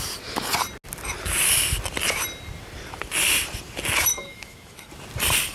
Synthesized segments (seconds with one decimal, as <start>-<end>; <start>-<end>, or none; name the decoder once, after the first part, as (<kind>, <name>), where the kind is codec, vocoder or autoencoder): 4.1-4.9 (autoencoder, DAC-VAE)

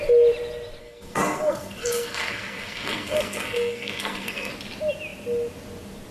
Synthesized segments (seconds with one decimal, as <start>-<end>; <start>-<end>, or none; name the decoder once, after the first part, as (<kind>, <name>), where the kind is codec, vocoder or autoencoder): 0.8-4.5 (codec, SNAC)